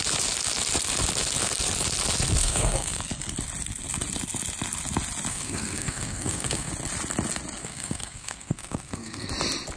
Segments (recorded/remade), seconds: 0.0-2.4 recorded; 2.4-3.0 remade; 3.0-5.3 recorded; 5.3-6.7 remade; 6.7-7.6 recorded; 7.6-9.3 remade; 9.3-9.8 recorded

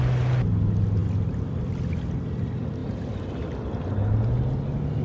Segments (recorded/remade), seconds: 0.0-5.0 recorded